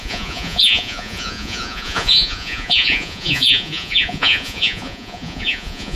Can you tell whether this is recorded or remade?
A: remade